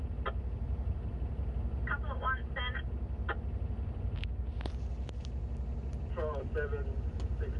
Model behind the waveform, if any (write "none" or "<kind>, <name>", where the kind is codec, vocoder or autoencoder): vocoder, BigVGAN v2